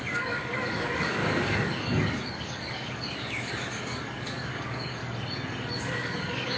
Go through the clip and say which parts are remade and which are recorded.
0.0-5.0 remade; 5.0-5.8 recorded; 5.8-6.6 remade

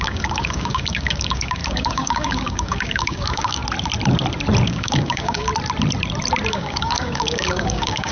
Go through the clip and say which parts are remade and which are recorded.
0.0-3.6 remade; 3.6-4.6 recorded; 4.6-5.5 remade; 5.5-6.5 recorded; 6.5-8.1 remade

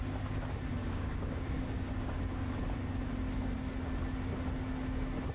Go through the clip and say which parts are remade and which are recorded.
0.0-0.8 recorded; 0.8-2.2 remade; 2.2-5.3 recorded

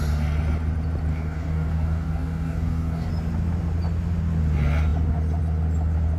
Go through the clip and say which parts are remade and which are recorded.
0.0-1.1 recorded; 1.1-3.1 remade; 3.1-6.2 recorded

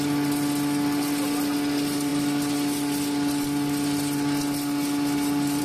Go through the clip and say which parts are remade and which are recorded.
0.0-5.6 recorded

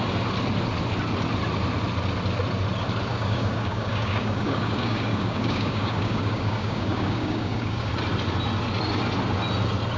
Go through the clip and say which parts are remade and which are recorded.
0.0-3.1 recorded; 3.1-7.9 remade; 7.9-10.0 recorded

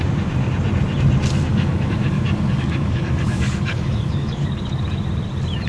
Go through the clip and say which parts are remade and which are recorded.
0.0-1.5 recorded; 1.5-4.8 remade; 4.8-5.7 recorded